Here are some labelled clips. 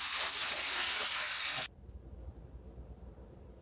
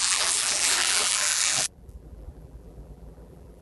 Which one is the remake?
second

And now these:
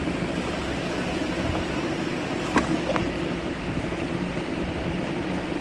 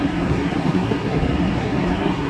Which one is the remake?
second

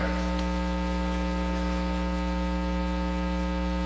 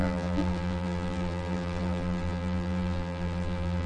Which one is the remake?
second